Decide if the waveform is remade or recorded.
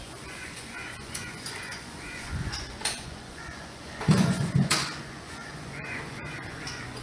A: remade